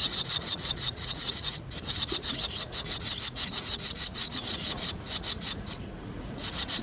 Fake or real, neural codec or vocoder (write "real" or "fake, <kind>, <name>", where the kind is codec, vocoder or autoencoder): fake, vocoder, Vocos